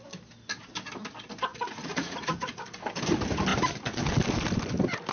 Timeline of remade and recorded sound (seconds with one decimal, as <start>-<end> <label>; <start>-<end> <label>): 0.0-1.5 recorded; 1.5-2.6 remade; 2.6-5.1 recorded